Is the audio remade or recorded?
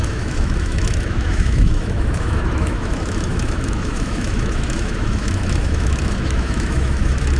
remade